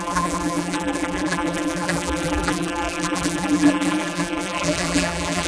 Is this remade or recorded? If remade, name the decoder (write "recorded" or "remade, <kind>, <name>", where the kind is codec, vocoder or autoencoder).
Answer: remade, vocoder, BigVGAN v2